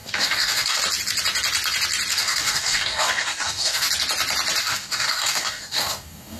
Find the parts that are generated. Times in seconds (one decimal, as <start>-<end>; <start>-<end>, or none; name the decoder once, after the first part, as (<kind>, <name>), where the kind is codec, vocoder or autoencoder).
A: 0.0-0.8 (codec, DAC); 2.1-3.9; 4.6-6.4